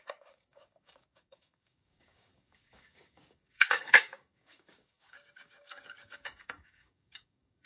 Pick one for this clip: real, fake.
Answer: fake